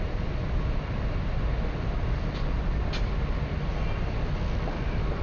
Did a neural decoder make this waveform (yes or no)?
no